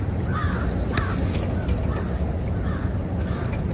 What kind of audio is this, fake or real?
real